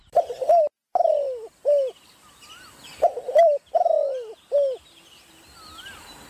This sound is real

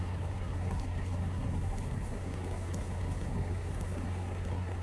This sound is fake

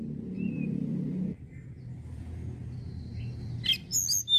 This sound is real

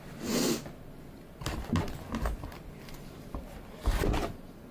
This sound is real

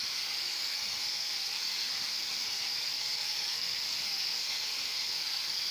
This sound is fake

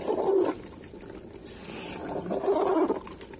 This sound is real